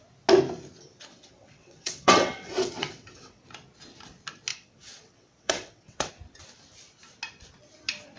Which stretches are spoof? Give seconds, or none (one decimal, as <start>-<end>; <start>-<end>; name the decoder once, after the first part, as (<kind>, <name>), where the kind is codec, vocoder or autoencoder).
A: 1.1-3.4 (vocoder, WaveNeXt); 4.5-6.1